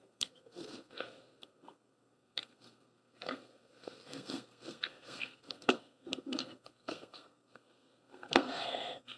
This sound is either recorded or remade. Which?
remade